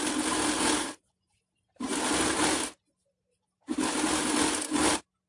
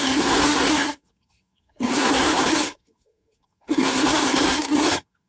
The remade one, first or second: second